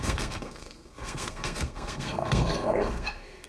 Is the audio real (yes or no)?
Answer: no